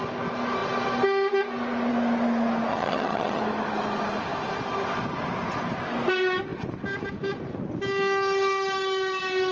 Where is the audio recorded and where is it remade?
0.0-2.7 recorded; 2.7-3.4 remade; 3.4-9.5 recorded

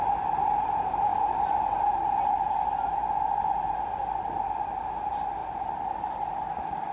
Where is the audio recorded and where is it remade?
0.0-5.4 recorded; 5.4-6.0 remade; 6.0-6.9 recorded

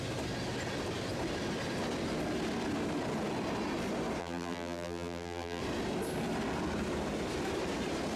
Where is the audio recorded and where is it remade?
0.0-4.2 recorded; 4.2-5.6 remade; 5.6-8.2 recorded

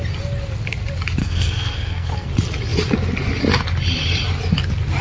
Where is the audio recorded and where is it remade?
0.0-1.2 recorded; 1.2-2.3 remade; 2.3-5.0 recorded

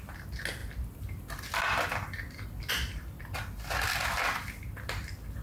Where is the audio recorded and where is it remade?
0.0-5.4 recorded

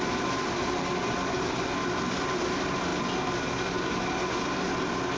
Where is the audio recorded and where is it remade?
0.0-2.9 remade; 2.9-3.7 recorded; 3.7-5.2 remade

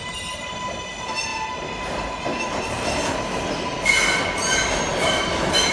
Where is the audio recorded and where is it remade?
0.0-5.7 recorded